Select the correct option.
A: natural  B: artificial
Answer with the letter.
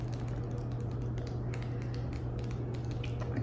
A